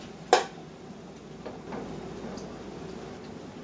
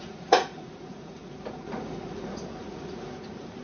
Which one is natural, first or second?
first